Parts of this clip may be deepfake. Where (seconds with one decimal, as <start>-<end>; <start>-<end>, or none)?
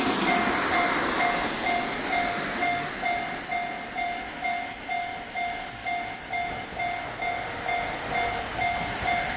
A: 2.3-2.9